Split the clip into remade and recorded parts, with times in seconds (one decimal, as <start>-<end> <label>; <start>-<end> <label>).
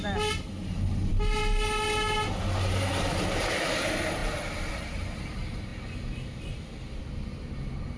0.0-8.0 recorded